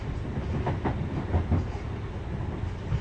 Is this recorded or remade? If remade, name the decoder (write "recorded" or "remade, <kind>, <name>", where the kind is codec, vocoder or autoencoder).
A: recorded